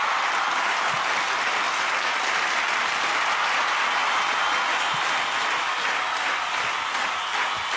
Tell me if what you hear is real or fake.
real